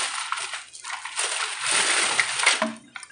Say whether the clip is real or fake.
real